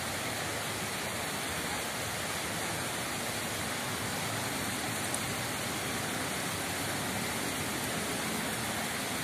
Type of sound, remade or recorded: recorded